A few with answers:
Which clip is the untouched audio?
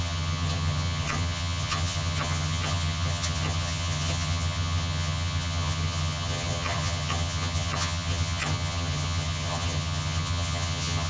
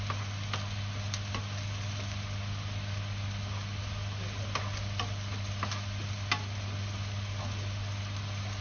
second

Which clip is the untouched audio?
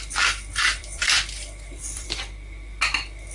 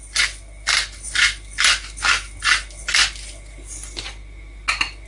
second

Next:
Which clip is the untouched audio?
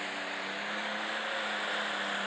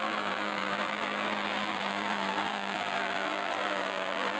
first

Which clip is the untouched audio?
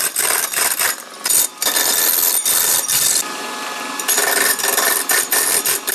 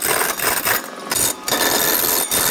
second